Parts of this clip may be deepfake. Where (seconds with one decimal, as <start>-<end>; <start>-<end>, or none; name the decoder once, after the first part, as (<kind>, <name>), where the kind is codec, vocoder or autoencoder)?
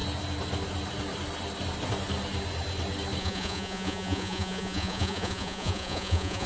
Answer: 3.2-6.5 (vocoder, Vocos)